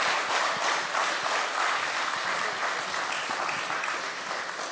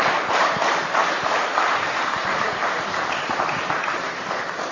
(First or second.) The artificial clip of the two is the second